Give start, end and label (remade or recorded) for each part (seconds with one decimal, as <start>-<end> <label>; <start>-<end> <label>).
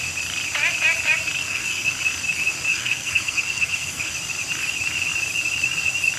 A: 0.0-1.4 recorded; 1.4-1.9 remade; 1.9-2.7 recorded; 2.7-4.1 remade; 4.1-6.2 recorded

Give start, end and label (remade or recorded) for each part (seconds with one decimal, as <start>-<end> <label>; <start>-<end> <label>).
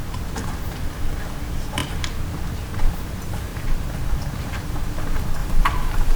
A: 0.0-3.5 recorded; 3.5-4.6 remade; 4.6-5.4 recorded; 5.4-6.2 remade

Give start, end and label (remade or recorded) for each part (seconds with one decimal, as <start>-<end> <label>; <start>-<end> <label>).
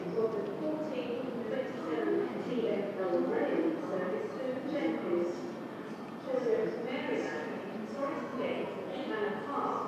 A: 0.0-8.3 recorded; 8.3-9.1 remade; 9.1-9.9 recorded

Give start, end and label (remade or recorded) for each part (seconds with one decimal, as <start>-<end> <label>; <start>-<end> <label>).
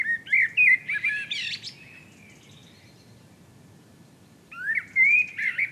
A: 0.0-2.6 recorded; 2.6-5.3 remade; 5.3-5.7 recorded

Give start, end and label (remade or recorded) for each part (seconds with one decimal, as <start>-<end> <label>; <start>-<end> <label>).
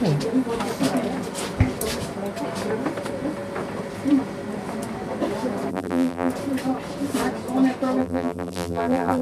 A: 0.0-5.7 recorded; 5.7-6.3 remade; 6.3-8.0 recorded; 8.0-9.2 remade